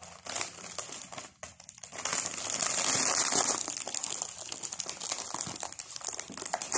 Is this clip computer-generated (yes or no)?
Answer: no